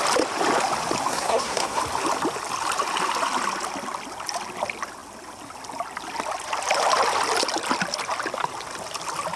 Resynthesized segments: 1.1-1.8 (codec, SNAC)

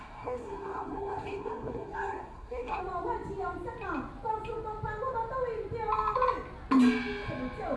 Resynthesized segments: 0.0-2.8 (codec, SNAC)

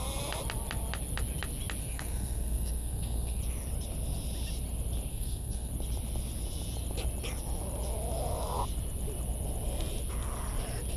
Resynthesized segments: 1.8-3.4 (codec, SNAC); 5.1-5.7

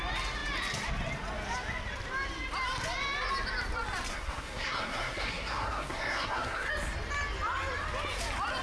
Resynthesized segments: 4.1-6.7 (codec, SNAC)

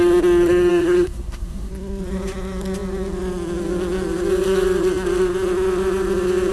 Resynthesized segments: 0.7-1.7 (codec, SNAC)

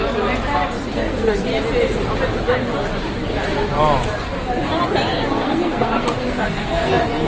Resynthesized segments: 0.9-1.5 (codec, SNAC); 5.3-7.3

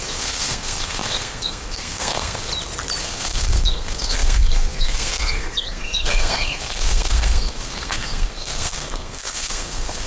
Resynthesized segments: 0.0-2.5 (codec, SNAC); 3.0-10.1

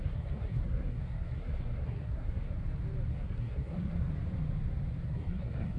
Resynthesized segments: 0.0-2.5 (codec, SNAC); 3.1-4.1; 5.0-5.8